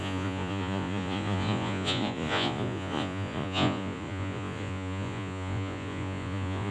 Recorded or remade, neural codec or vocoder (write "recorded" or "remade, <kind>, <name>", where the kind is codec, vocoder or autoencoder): remade, vocoder, Vocos